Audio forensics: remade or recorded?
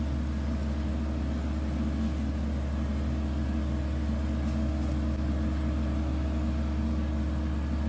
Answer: recorded